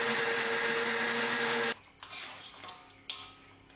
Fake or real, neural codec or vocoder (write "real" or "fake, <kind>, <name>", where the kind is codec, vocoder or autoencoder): real